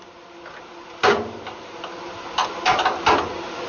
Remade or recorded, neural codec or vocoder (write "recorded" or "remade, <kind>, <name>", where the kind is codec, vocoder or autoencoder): recorded